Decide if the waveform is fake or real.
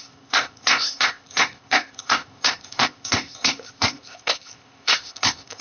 fake